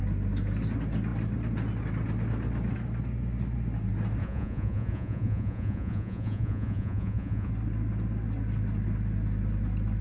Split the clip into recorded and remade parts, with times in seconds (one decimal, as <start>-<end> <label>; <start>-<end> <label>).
0.0-4.2 recorded; 4.2-7.5 remade; 7.5-10.0 recorded